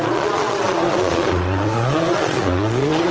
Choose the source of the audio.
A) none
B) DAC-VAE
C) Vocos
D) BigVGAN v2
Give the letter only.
C